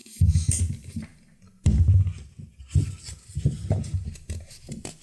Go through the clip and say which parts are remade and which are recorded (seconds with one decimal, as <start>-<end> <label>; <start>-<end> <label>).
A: 0.0-0.6 remade; 0.6-5.0 recorded